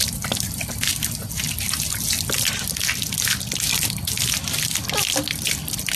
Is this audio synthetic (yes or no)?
no